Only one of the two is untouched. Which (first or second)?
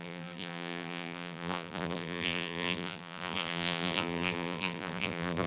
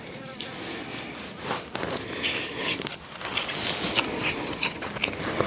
second